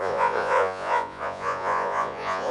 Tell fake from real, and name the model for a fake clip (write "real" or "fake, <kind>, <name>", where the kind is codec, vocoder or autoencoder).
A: fake, vocoder, Vocos